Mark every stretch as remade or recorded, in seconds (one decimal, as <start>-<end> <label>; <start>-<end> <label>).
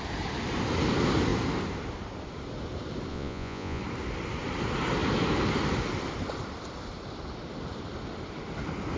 0.0-3.1 recorded; 3.1-3.8 remade; 3.8-9.0 recorded